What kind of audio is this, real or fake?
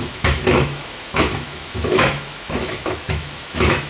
fake